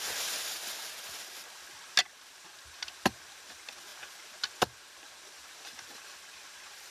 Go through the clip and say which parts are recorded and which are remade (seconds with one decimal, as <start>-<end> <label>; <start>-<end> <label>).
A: 0.0-6.9 recorded